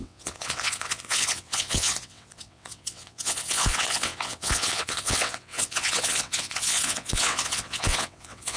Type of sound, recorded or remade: remade